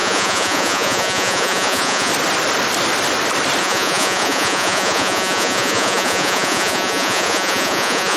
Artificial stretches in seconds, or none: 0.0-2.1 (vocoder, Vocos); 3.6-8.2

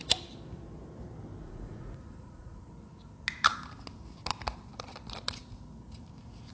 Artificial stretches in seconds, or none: 1.4-2.7 (vocoder, Vocos)

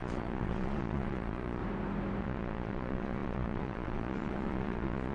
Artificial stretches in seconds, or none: 0.0-1.6 (vocoder, Vocos); 2.2-5.1